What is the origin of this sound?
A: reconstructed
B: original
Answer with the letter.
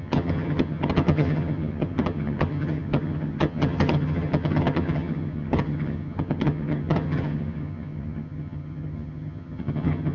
A